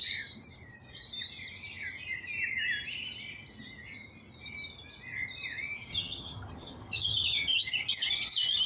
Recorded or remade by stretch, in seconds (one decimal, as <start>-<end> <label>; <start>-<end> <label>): 0.0-5.9 recorded; 5.9-7.7 remade; 7.7-8.7 recorded